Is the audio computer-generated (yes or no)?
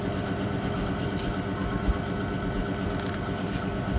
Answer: no